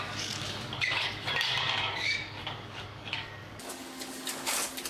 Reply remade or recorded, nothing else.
remade